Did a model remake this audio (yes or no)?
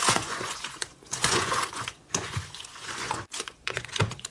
yes